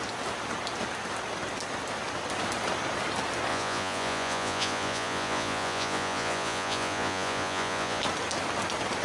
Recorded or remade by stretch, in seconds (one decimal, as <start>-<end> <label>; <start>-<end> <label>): 0.0-3.5 recorded; 3.5-8.0 remade; 8.0-9.0 recorded